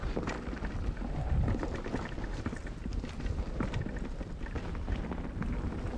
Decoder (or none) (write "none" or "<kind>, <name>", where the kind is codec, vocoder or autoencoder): none